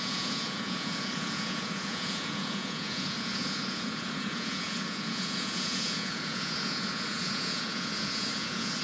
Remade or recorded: remade